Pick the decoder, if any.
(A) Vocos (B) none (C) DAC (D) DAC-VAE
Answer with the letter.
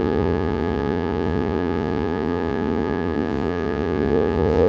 A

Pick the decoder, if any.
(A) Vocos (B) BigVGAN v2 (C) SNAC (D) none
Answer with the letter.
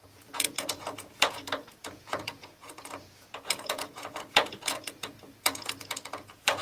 A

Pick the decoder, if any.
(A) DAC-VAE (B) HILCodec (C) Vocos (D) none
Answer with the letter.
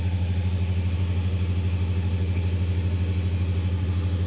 D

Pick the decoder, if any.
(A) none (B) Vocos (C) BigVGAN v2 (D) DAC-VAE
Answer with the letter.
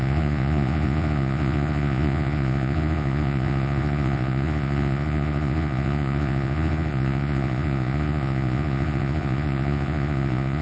B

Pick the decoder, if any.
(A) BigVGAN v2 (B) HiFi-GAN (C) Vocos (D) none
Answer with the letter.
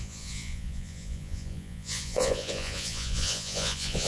C